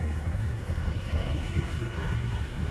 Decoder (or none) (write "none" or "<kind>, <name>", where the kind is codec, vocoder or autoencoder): codec, SNAC